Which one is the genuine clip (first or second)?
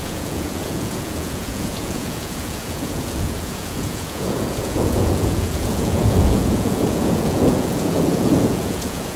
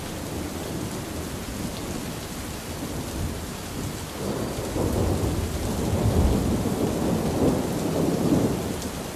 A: second